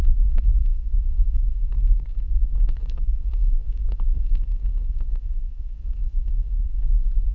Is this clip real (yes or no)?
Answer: no